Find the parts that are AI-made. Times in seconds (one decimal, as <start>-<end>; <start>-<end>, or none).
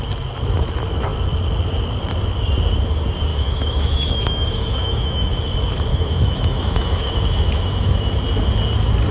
3.3-5.4; 5.9-8.2